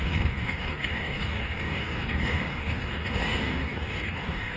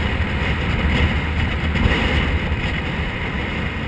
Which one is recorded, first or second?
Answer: second